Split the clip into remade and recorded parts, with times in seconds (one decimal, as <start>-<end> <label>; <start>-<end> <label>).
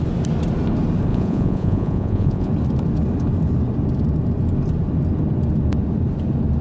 0.0-1.1 recorded; 1.1-2.5 remade; 2.5-6.6 recorded